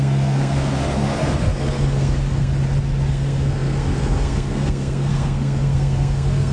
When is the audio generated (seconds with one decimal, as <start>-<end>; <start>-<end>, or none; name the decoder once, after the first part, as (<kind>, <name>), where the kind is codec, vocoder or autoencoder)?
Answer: 0.0-2.5 (codec, SNAC); 3.1-6.5